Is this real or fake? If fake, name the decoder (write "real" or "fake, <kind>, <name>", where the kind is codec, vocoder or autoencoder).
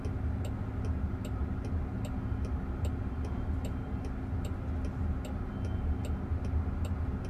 real